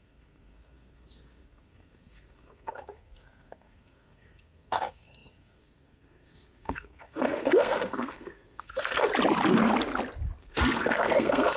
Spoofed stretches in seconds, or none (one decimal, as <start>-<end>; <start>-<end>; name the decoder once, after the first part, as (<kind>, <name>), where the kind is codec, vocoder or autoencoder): 0.0-9.1 (codec, SNAC); 10.4-11.6